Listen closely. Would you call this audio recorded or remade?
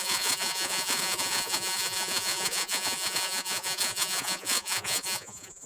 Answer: remade